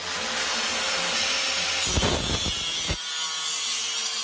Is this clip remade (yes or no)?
no